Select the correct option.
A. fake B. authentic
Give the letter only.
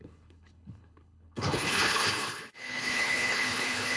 A